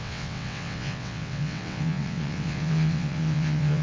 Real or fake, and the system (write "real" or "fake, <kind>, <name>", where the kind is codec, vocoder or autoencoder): fake, vocoder, WaveNeXt